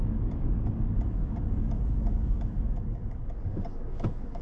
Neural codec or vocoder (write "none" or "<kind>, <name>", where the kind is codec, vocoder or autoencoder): codec, DAC